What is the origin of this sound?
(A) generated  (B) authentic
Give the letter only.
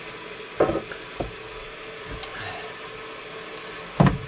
B